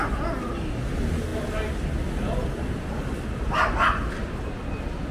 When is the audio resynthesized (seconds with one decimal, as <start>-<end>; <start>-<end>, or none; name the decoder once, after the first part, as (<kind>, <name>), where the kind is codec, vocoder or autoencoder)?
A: none